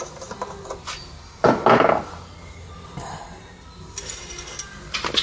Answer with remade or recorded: recorded